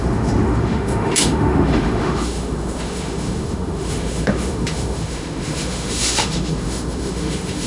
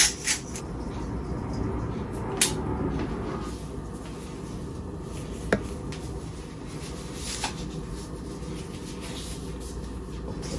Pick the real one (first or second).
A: second